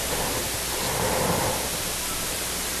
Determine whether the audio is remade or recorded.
recorded